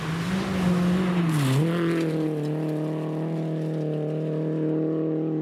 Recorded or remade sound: recorded